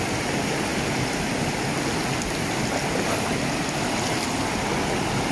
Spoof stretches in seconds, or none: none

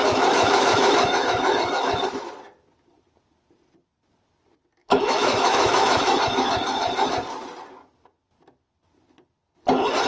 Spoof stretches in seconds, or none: 0.0-1.9; 4.8-6.5

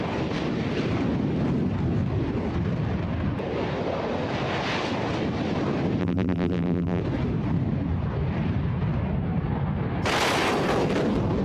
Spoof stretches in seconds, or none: 6.0-7.0

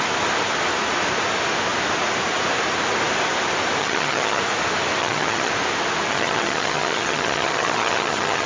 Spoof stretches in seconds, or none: 3.8-4.4; 5.0-5.5; 6.1-8.5

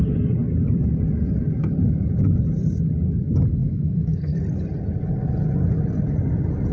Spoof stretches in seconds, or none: 3.6-4.2

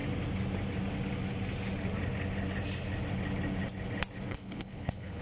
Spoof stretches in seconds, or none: 4.3-5.2

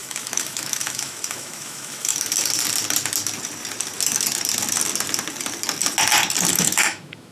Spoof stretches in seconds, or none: 0.0-2.1; 6.5-7.3

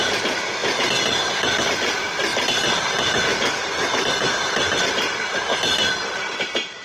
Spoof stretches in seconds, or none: 3.3-4.4; 5.5-6.1